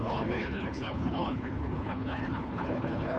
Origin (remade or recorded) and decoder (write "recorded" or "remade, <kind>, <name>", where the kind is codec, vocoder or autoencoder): remade, codec, HILCodec